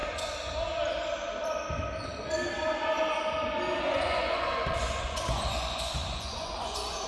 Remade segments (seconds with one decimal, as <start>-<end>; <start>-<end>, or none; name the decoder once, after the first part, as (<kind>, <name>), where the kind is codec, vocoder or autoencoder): 3.8-7.1 (vocoder, Vocos)